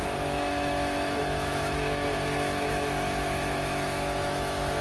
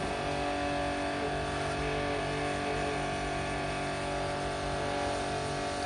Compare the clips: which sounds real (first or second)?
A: second